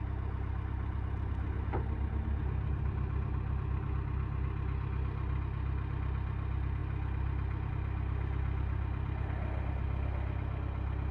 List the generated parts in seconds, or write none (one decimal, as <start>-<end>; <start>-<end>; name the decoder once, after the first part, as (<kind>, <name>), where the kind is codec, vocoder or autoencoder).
none